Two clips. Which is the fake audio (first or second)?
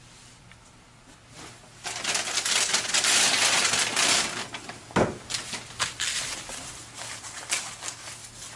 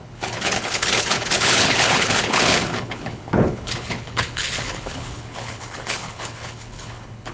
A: second